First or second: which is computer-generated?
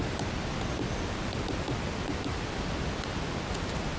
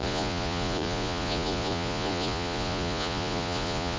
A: second